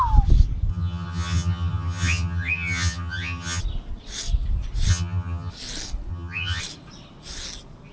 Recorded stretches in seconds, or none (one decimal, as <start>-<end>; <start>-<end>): 0.0-0.7; 3.6-4.9; 5.5-6.1; 6.6-7.9